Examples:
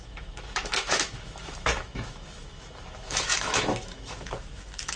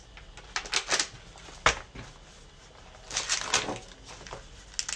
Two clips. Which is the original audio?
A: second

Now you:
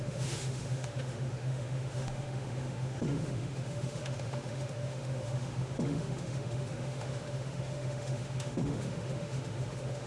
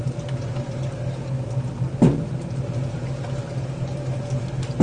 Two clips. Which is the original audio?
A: second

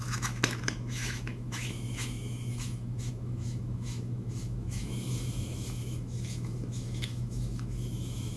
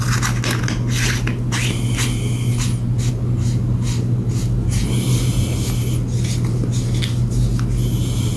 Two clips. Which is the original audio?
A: second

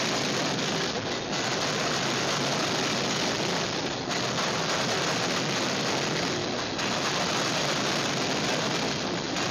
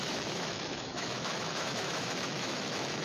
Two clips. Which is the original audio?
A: first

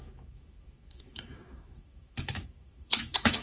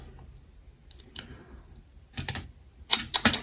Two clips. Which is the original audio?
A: second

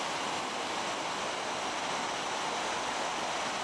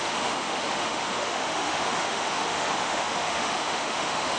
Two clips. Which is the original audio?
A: first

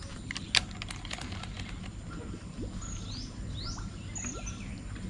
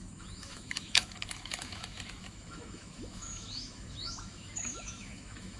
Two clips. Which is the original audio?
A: first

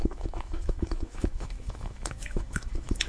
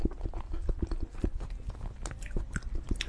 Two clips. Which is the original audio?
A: second